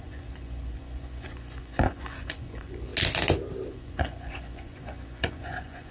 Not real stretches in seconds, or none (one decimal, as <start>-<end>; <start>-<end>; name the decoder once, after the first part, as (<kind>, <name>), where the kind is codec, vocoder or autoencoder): 0.0-2.9 (vocoder, Vocos); 3.7-5.9